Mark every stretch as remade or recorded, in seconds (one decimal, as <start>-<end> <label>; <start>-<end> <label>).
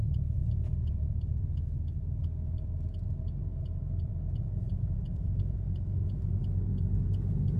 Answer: 0.0-0.4 recorded; 0.4-1.8 remade; 1.8-3.4 recorded; 3.4-6.4 remade; 6.4-7.6 recorded